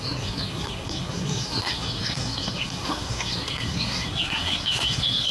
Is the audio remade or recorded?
remade